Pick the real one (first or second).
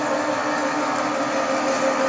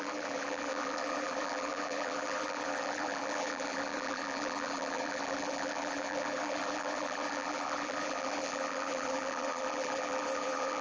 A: first